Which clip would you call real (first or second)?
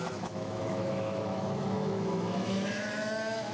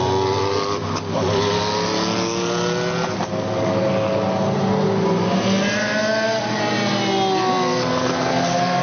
second